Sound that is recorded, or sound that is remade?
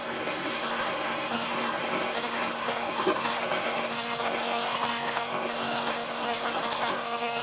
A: remade